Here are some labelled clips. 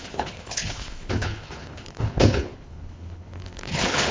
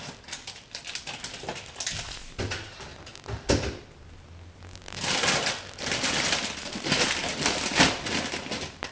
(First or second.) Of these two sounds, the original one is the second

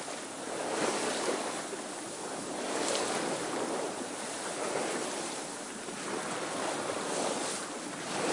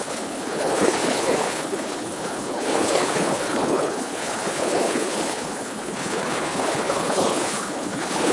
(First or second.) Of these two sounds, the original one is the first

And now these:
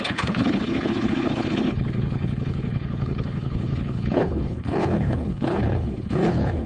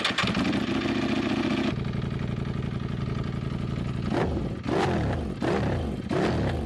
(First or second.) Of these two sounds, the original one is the second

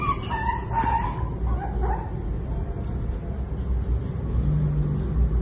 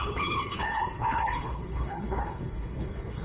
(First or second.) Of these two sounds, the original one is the first